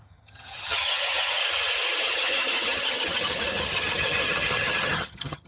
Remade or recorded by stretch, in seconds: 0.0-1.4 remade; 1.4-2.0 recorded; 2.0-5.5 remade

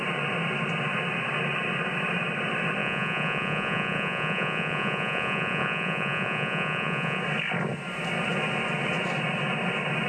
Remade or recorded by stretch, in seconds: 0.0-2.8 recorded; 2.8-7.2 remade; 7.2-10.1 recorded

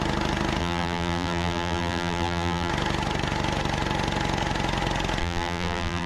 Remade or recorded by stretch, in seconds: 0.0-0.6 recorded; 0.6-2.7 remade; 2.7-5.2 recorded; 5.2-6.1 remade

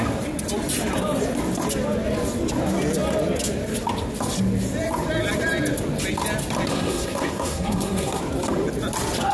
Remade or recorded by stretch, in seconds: 0.0-6.7 recorded; 6.7-8.2 remade; 8.2-9.3 recorded

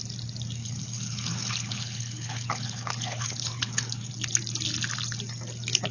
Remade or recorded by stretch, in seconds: 0.0-0.6 recorded; 0.6-4.1 remade; 4.1-5.9 recorded

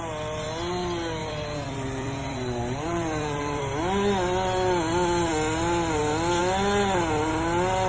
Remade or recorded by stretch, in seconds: 0.0-1.2 recorded; 1.2-3.6 remade; 3.6-7.9 recorded

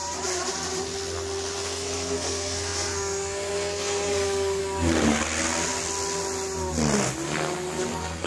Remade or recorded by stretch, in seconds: 0.0-1.6 recorded; 1.6-4.6 remade; 4.6-7.9 recorded; 7.9-8.3 remade

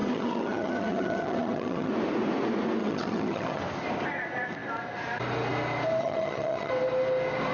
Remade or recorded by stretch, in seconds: 0.0-1.9 remade; 1.9-2.8 recorded; 2.8-3.6 remade; 3.6-6.0 recorded; 6.0-6.7 remade; 6.7-7.5 recorded